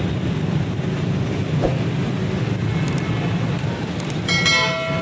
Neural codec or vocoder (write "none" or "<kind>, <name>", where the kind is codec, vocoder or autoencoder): none